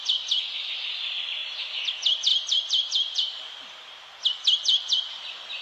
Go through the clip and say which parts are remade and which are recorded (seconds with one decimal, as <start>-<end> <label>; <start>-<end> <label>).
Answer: 0.0-1.4 recorded; 1.4-1.9 remade; 1.9-2.3 recorded; 2.3-3.4 remade; 3.4-5.6 recorded